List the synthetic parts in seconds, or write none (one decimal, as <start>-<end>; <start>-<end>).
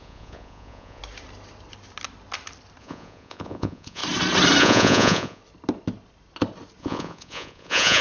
0.0-1.0; 2.8-4.0; 4.6-5.4; 6.8-8.0